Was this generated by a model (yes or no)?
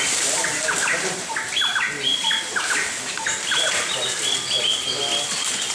no